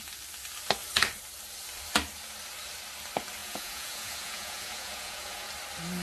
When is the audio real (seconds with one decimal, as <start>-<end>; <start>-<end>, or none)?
0.0-3.4; 5.5-6.0